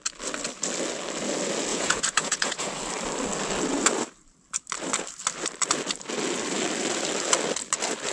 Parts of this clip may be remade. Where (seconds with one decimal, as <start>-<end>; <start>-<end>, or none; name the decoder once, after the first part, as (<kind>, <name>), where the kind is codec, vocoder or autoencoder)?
1.7-2.7 (vocoder, Vocos)